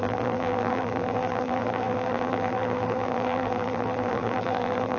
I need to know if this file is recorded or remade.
remade